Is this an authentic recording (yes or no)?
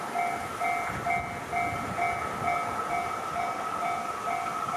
yes